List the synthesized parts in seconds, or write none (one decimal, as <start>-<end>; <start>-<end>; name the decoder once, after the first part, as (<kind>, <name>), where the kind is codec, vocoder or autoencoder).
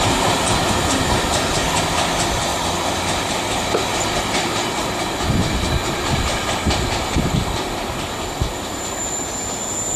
2.5-4.2 (vocoder, BigVGAN v2)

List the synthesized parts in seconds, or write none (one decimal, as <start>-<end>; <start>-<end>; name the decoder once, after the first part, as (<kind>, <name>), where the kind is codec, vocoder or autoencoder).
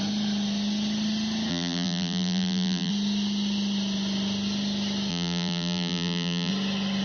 1.5-2.9 (vocoder, BigVGAN v2); 5.1-6.5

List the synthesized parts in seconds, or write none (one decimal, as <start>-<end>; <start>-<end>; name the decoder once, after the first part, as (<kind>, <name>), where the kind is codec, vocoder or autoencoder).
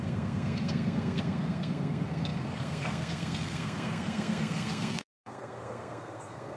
0.0-6.6 (codec, SNAC)